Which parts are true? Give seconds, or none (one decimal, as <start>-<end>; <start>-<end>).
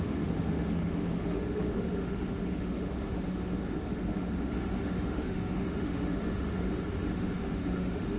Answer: none